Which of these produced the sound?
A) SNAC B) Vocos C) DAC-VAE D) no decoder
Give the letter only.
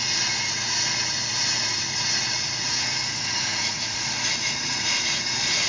B